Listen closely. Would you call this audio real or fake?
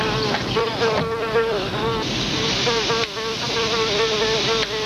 real